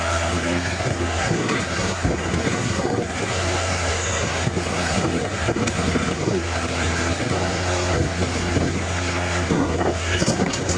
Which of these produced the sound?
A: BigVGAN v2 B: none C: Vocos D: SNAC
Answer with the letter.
D